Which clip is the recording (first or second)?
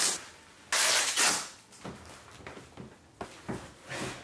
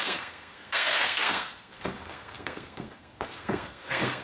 first